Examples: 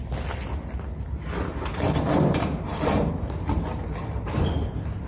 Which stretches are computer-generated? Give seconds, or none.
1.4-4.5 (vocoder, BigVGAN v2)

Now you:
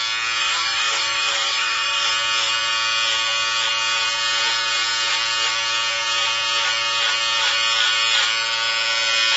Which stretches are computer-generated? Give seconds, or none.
0.4-2.1 (autoencoder, DAC-VAE)

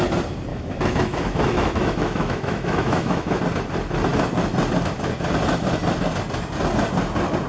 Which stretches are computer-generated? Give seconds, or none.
0.5-3.4 (autoencoder, DAC-VAE)

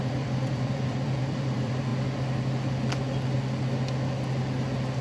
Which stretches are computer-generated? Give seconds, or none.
0.0-1.9 (vocoder, BigVGAN v2)

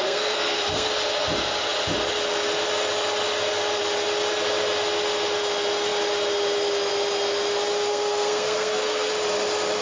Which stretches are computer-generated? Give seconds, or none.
0.0-0.9 (codec, SNAC); 7.9-9.1

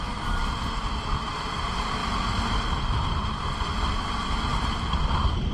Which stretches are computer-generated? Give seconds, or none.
0.0-2.0 (vocoder, BigVGAN v2); 4.0-5.5

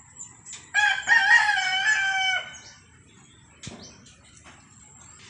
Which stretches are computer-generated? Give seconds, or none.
none